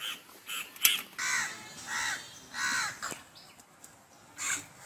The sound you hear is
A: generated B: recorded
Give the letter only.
B